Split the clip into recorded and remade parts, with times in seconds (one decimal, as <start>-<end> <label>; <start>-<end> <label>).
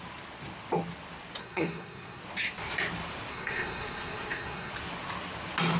0.0-1.4 recorded; 1.4-2.2 remade; 2.2-3.3 recorded; 3.3-4.7 remade; 4.7-5.8 recorded